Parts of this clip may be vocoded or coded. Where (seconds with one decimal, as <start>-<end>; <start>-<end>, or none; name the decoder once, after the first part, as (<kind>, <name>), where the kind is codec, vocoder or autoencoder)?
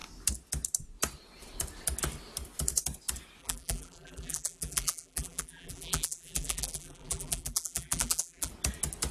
3.4-8.5 (vocoder, BigVGAN v2)